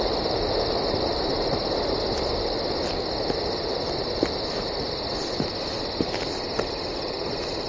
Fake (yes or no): no